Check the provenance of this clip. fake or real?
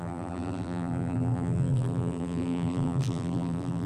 fake